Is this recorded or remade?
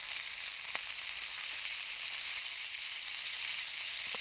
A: recorded